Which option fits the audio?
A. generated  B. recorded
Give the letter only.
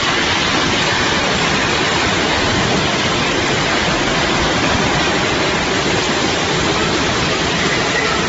B